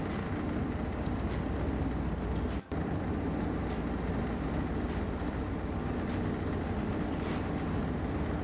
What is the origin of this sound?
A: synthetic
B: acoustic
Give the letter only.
B